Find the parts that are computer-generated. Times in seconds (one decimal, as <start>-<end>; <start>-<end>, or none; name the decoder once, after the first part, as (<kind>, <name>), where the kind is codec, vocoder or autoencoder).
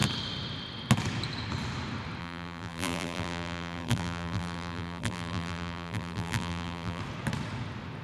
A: 2.2-7.0 (vocoder, BigVGAN v2)